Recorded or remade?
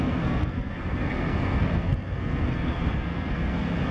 remade